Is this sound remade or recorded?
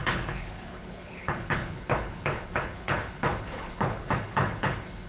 remade